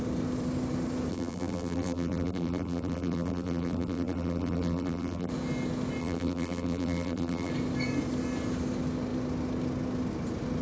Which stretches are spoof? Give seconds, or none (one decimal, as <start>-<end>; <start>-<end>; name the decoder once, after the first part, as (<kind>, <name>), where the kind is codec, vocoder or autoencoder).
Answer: 1.1-5.3 (vocoder, BigVGAN v2); 6.0-7.5

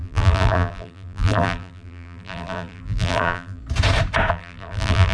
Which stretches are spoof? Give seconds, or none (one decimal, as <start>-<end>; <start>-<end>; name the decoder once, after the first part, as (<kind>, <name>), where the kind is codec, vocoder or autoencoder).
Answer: 0.0-3.6 (vocoder, BigVGAN v2); 4.3-5.1

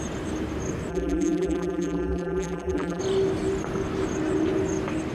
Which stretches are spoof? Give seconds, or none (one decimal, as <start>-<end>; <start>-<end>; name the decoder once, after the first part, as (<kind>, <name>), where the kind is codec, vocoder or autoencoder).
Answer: 0.9-3.0 (vocoder, BigVGAN v2)